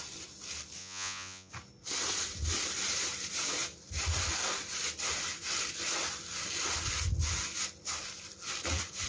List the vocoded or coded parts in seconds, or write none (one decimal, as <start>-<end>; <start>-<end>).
0.8-1.5